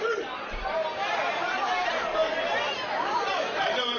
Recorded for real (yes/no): no